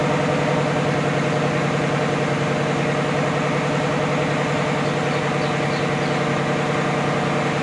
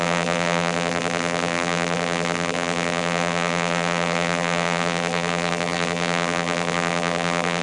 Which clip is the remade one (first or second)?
second